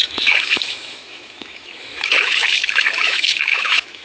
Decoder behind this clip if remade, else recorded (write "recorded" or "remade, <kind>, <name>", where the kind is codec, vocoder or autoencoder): remade, autoencoder, DAC-VAE